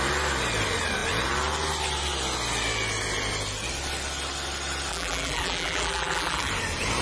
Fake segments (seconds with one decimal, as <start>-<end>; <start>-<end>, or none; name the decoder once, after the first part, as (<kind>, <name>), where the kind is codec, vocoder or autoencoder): 4.9-6.5 (vocoder, BigVGAN v2)